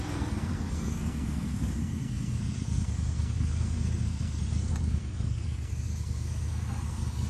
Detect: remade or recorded remade